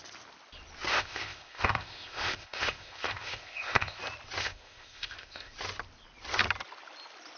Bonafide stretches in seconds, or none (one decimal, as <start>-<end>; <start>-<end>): 0.0-0.9; 4.0-4.4; 5.5-7.4